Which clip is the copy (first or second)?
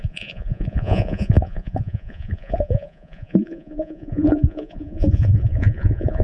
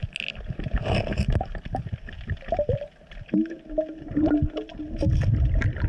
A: first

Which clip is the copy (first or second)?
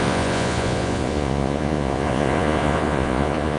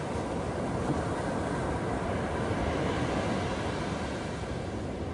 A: first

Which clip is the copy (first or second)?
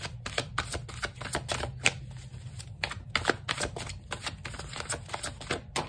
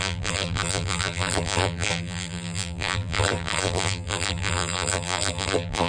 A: second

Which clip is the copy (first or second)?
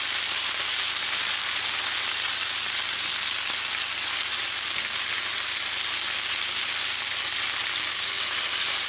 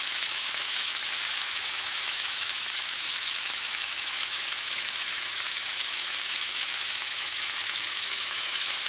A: second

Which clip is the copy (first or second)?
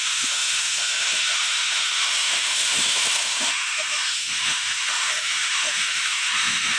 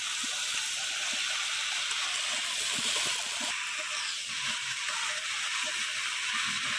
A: first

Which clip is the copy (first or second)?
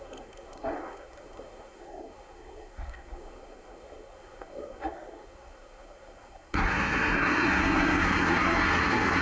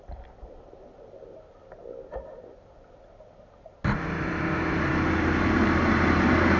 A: first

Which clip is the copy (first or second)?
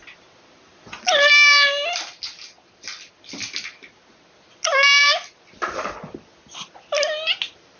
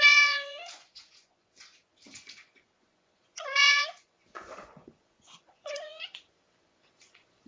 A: second